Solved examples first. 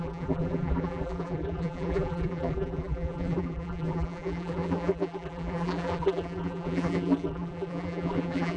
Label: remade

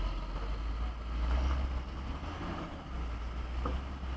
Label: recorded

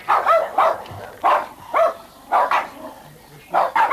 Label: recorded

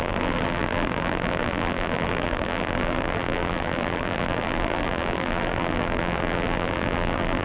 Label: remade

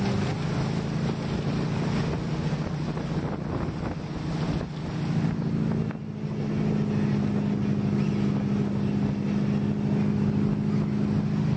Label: recorded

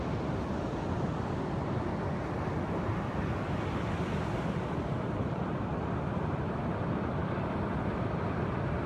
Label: recorded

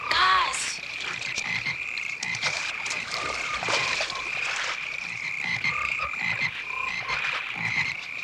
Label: remade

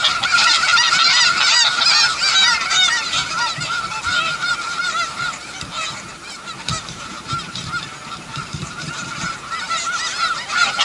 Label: remade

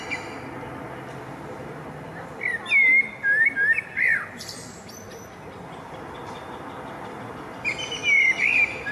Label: recorded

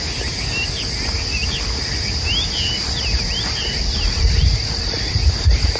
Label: recorded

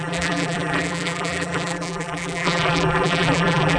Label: remade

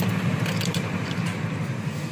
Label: remade